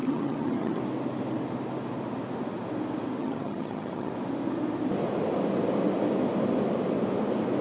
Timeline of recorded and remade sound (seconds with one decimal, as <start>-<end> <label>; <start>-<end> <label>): 0.0-0.8 remade; 0.8-3.2 recorded; 3.2-4.1 remade; 4.1-7.6 recorded